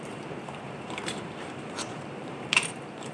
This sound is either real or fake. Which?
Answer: fake